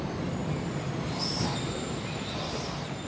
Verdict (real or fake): real